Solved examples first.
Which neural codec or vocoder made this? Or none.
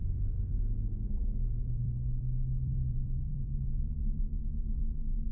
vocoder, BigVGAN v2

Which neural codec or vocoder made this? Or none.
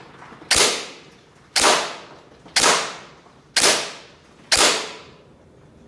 none